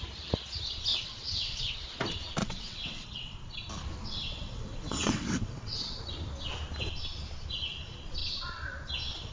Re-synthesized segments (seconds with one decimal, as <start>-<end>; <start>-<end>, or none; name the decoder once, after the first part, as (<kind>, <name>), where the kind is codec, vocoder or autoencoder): 0.9-1.8 (vocoder, WaveNeXt); 2.4-3.4; 4.0-6.0